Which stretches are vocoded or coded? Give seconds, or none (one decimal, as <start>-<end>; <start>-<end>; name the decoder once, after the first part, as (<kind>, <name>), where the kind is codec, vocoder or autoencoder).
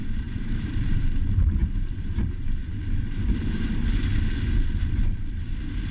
0.0-4.0 (vocoder, BigVGAN v2)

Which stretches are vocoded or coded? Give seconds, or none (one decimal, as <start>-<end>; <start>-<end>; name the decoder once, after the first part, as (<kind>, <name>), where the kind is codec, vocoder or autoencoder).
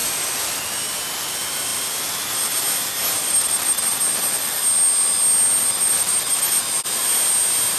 none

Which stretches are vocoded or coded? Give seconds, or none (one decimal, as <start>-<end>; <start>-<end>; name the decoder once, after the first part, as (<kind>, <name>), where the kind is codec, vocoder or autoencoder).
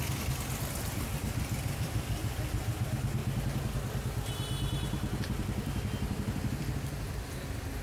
0.0-3.2 (vocoder, BigVGAN v2); 5.2-7.8